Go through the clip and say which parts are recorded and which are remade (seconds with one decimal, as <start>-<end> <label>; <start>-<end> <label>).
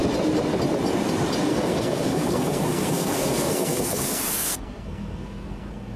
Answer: 0.0-1.4 recorded; 1.4-6.0 remade